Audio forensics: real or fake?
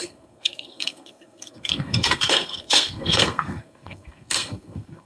fake